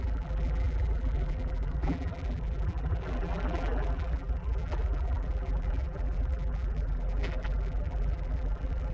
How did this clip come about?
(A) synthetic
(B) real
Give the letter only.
A